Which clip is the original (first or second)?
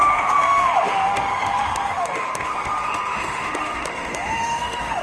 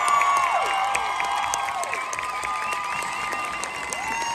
second